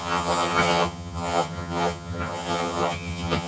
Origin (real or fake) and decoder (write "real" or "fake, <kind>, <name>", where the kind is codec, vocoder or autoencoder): fake, vocoder, HiFi-GAN